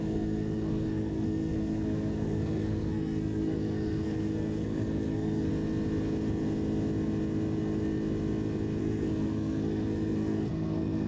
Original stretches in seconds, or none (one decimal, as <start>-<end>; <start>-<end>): 5.5-8.8